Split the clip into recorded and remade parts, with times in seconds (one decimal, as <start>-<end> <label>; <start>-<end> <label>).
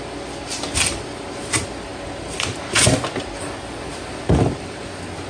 0.0-5.3 recorded